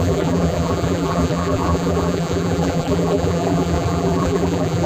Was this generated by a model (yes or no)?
yes